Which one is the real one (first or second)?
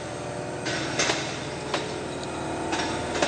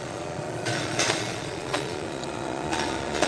first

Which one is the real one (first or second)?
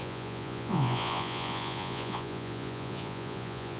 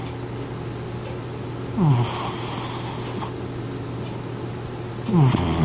second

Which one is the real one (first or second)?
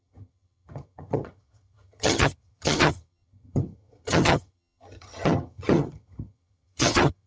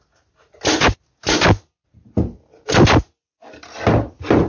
second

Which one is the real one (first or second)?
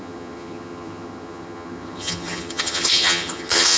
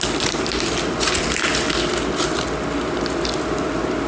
second